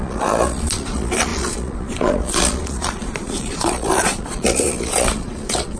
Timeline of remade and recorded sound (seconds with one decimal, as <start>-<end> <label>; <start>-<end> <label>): 0.0-5.8 remade